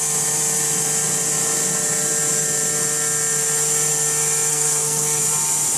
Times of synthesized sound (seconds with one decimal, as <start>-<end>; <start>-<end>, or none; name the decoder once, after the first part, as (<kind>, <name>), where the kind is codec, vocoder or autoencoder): 4.5-5.2 (codec, SNAC)

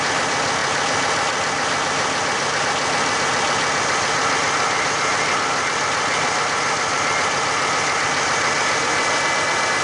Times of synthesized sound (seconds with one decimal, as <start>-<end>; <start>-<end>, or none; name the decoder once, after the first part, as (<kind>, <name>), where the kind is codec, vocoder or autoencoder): none

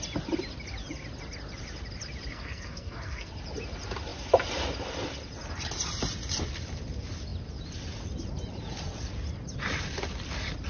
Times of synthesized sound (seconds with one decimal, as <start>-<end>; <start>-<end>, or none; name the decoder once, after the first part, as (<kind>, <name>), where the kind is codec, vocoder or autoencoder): 2.3-3.3 (codec, SNAC)

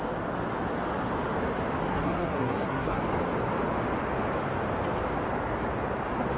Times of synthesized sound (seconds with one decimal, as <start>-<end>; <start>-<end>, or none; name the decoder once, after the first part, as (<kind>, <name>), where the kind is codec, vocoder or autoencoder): 1.9-3.0 (codec, SNAC)

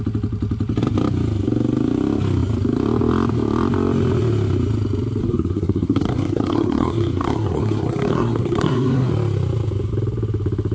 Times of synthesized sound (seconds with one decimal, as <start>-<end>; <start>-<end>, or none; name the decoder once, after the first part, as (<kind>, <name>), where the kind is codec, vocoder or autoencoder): 5.2-9.1 (codec, SNAC)

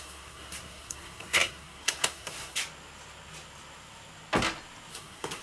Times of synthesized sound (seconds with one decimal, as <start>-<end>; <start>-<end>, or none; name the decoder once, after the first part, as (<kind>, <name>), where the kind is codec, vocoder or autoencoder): 0.0-2.6 (codec, SNAC); 4.9-5.4